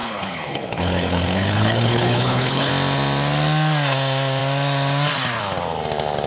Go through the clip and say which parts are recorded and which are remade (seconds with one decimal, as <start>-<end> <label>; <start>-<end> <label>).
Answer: 0.0-2.7 remade; 2.7-6.3 recorded